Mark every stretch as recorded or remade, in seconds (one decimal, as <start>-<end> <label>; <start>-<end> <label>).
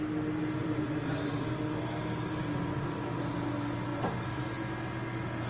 0.0-0.6 recorded; 0.6-1.5 remade; 1.5-3.9 recorded; 3.9-4.4 remade; 4.4-5.5 recorded